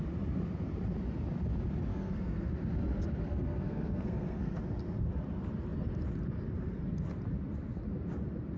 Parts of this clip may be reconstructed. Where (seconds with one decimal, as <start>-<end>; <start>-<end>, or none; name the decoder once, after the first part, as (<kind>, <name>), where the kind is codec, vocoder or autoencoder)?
1.9-2.5 (codec, SNAC); 3.2-4.6